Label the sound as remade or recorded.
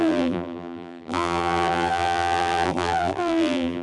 remade